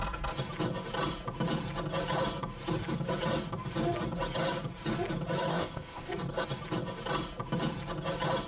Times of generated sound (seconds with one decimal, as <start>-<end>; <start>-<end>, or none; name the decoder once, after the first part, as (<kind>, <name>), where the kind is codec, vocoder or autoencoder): 5.5-6.1 (codec, ZipCodec)